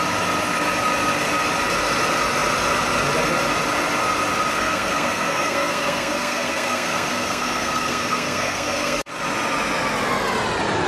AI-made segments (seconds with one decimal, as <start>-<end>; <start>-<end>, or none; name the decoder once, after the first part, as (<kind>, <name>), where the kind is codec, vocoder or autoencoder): 4.5-9.1 (codec, SNAC)